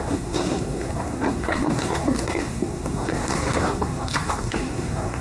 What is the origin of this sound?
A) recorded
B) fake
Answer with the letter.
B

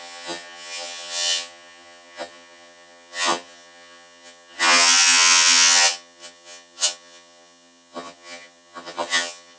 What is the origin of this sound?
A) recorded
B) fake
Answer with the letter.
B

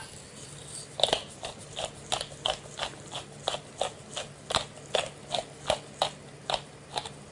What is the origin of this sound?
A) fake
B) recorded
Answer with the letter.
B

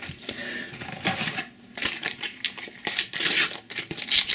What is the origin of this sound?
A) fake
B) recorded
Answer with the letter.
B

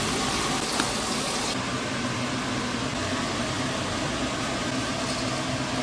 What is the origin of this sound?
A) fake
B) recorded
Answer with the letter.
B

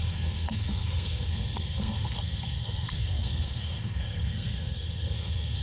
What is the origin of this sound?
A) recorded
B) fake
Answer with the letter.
B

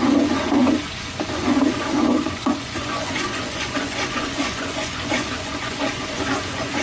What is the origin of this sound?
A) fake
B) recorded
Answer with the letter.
A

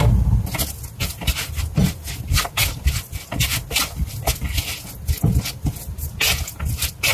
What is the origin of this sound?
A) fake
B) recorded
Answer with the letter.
B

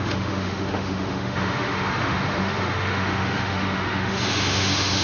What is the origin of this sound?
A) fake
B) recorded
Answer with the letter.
A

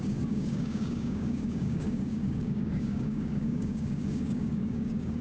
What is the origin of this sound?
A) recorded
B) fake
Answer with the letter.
B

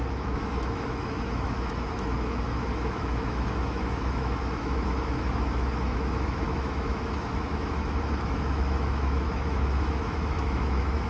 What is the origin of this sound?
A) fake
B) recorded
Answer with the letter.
A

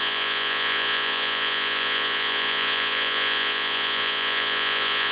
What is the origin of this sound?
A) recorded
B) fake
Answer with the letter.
B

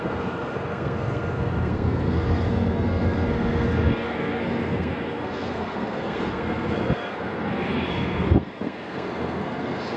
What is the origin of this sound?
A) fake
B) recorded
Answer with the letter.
A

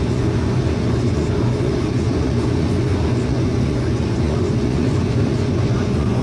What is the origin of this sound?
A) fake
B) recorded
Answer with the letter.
A